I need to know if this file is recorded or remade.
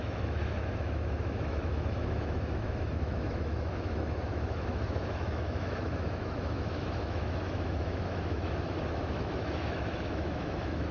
remade